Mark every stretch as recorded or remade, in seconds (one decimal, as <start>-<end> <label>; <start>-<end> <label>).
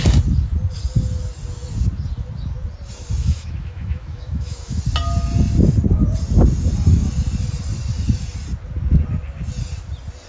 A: 0.0-3.2 recorded; 3.2-4.8 remade; 4.8-10.3 recorded